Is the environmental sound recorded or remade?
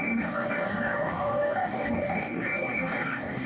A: remade